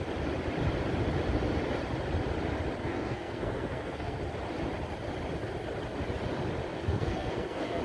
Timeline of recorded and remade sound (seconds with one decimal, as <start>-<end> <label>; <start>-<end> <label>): 0.0-2.8 recorded; 2.8-4.2 remade; 4.2-6.7 recorded; 6.7-7.8 remade